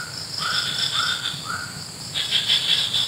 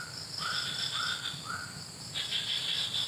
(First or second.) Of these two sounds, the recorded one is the second